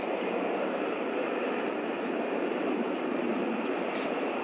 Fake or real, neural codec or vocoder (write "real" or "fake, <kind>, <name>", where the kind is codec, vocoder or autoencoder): fake, vocoder, BigVGAN v2